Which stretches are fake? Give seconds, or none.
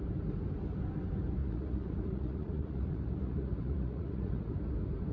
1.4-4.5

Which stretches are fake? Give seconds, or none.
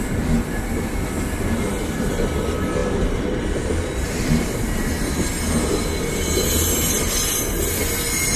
none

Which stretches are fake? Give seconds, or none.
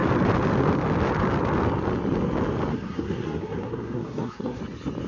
2.7-4.6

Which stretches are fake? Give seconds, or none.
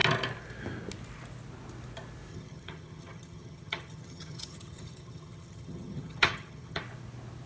2.3-6.8